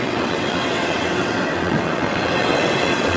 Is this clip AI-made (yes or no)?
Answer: yes